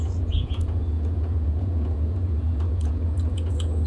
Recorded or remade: remade